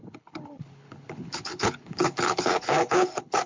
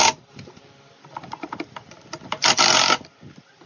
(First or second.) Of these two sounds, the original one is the second